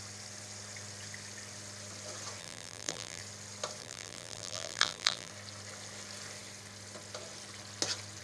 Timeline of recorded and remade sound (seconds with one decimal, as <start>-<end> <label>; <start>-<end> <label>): 0.0-2.4 recorded; 2.4-3.2 remade; 3.2-3.8 recorded; 3.8-5.3 remade; 5.3-8.2 recorded